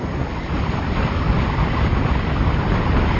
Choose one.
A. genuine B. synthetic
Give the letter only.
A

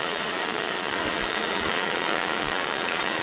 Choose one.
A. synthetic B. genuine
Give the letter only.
A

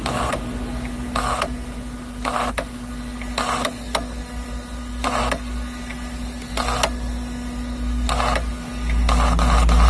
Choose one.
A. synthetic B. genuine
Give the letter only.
B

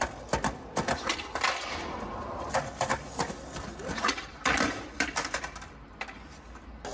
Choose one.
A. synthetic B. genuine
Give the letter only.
B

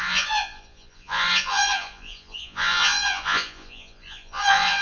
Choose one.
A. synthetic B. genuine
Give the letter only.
A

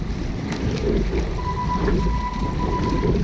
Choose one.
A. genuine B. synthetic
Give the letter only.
A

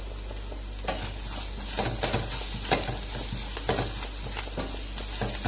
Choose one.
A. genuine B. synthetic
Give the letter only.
A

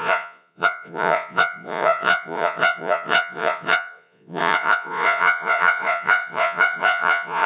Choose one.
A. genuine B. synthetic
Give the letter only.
B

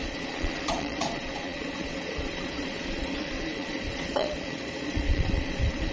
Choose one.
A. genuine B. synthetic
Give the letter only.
B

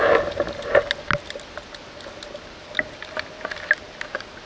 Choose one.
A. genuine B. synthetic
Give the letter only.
A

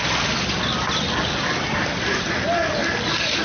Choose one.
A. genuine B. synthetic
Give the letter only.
A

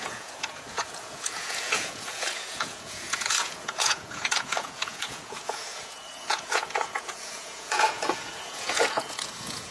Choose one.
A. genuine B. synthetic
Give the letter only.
B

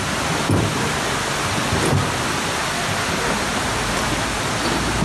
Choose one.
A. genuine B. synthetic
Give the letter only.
A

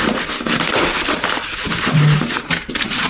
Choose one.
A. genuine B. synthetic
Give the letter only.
A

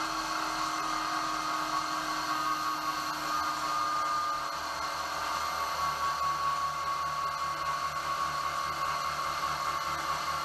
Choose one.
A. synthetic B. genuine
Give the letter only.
B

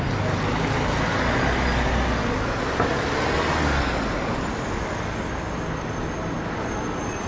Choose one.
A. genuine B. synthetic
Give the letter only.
A